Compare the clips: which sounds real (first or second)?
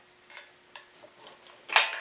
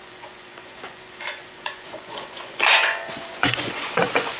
first